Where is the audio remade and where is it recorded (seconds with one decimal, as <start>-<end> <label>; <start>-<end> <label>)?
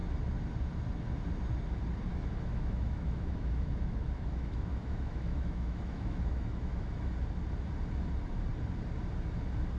0.0-2.1 recorded; 2.1-7.1 remade; 7.1-9.8 recorded